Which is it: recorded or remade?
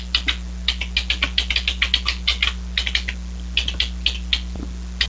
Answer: recorded